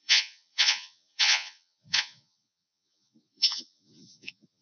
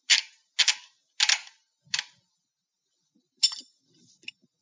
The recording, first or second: second